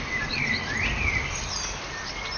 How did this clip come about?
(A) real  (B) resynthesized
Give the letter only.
A